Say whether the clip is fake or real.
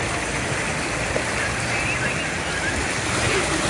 real